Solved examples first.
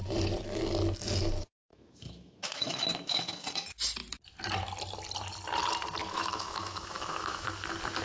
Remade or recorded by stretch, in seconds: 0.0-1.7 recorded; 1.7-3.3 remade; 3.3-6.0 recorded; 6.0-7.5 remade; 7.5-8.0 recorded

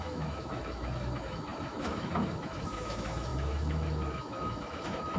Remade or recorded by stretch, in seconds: 0.0-5.2 remade

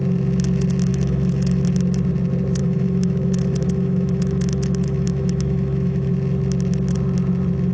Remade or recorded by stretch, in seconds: 0.0-0.9 recorded; 0.9-1.6 remade; 1.6-2.6 recorded; 2.6-6.1 remade; 6.1-7.7 recorded

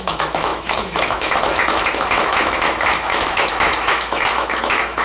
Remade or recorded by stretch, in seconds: 0.0-5.0 remade

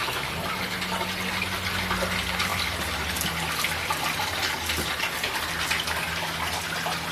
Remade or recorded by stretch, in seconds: 0.0-7.1 recorded

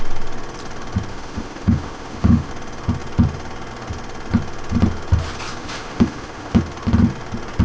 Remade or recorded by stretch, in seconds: 0.0-1.1 recorded; 1.1-2.5 remade; 2.5-5.6 recorded; 5.6-6.6 remade; 6.6-7.6 recorded

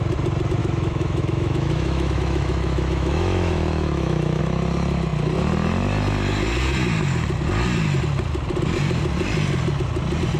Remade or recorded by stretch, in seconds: 0.0-0.6 recorded; 0.6-4.4 remade; 4.4-10.4 recorded

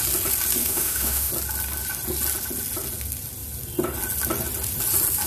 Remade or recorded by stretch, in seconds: 0.0-0.6 recorded; 0.6-1.3 remade; 1.3-5.3 recorded